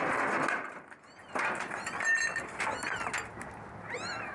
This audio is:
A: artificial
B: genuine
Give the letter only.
B